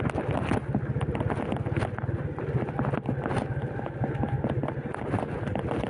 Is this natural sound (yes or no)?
yes